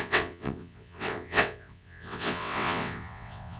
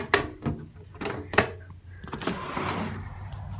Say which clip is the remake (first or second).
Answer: first